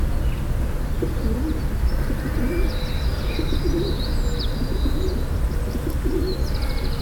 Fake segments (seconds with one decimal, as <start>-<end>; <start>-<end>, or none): none